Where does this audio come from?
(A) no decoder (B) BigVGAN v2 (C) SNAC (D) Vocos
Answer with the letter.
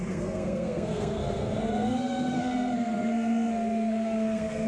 C